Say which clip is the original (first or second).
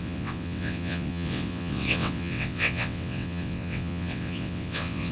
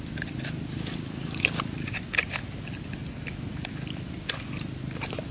second